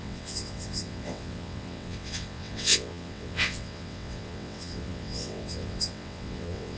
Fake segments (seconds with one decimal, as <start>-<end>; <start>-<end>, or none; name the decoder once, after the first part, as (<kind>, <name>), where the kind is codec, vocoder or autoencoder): 0.0-6.8 (vocoder, WaveNeXt)